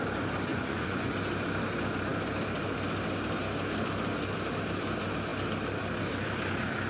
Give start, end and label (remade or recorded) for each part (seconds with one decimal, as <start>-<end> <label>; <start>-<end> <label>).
0.0-0.5 recorded; 0.5-1.1 remade; 1.1-6.9 recorded